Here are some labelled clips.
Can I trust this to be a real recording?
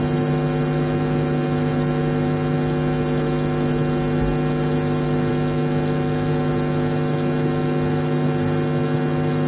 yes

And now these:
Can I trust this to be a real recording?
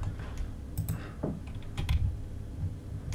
yes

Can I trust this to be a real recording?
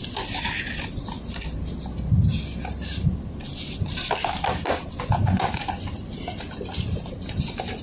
yes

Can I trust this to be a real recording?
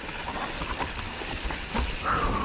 yes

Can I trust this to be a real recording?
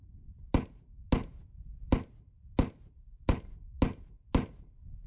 yes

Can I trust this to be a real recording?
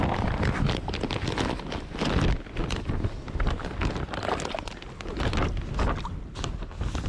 yes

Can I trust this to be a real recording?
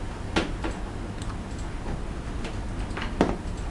yes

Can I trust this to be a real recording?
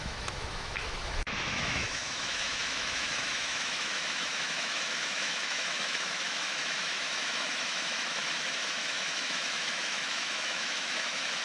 no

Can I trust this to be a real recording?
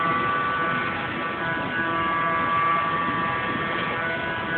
yes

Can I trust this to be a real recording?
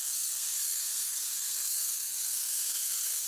no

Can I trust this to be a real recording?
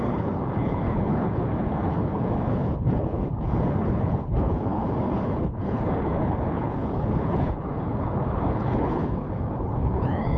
no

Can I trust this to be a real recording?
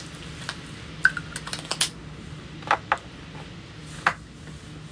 yes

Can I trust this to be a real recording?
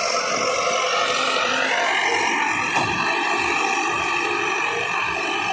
yes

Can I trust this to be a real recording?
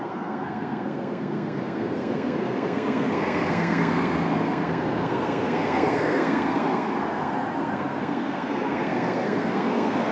no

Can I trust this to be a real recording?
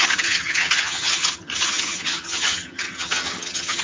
no